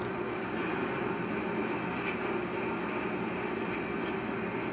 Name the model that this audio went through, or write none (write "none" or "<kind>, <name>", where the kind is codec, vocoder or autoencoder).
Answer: none